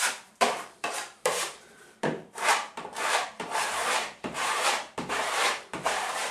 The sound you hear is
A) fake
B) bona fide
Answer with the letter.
A